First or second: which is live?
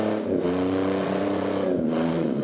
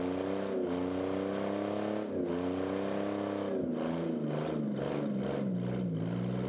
second